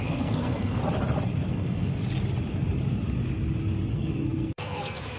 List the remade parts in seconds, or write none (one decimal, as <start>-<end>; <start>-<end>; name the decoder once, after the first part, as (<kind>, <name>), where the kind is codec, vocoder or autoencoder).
0.0-0.8 (codec, SNAC); 1.5-1.9; 3.9-5.2